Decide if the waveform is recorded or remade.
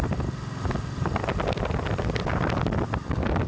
recorded